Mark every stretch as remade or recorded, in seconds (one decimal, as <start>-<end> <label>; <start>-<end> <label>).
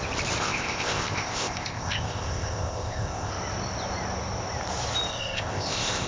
0.0-0.4 recorded; 0.4-3.3 remade; 3.3-5.1 recorded; 5.1-6.1 remade